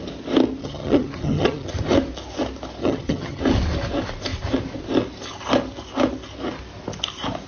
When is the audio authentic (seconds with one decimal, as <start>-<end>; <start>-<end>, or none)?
0.0-0.6; 1.7-2.8; 3.4-7.5